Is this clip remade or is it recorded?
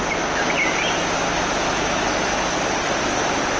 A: recorded